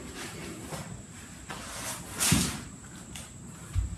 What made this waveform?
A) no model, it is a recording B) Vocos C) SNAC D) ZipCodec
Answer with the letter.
A